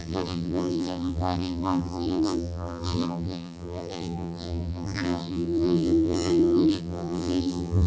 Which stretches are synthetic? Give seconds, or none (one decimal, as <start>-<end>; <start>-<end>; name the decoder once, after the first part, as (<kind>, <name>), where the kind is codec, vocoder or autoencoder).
0.0-7.9 (vocoder, BigVGAN v2)

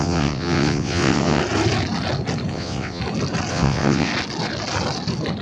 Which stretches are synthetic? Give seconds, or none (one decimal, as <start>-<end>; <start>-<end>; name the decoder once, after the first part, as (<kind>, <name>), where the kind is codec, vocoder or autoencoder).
0.0-1.4 (vocoder, WaveNeXt); 2.5-3.0; 3.5-4.1

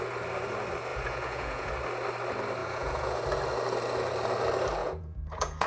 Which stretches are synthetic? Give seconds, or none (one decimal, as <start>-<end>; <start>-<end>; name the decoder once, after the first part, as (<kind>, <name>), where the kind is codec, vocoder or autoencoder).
0.9-1.7 (vocoder, Vocos); 2.6-3.2; 4.8-5.7

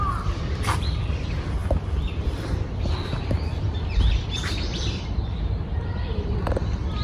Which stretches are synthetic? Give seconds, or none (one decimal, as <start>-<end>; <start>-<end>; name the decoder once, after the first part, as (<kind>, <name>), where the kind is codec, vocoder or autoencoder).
0.0-7.0 (vocoder, BigVGAN v2)

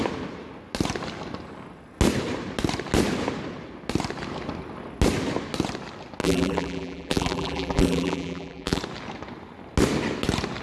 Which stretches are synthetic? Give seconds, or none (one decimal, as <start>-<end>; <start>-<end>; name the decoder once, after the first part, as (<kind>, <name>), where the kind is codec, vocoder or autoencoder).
6.2-8.8 (vocoder, BigVGAN v2)

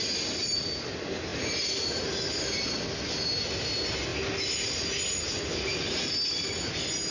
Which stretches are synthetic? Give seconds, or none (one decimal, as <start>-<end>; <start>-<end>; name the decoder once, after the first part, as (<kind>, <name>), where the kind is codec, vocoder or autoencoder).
none